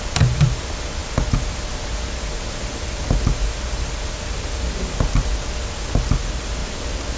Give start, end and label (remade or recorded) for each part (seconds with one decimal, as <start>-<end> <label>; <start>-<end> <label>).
0.0-7.2 recorded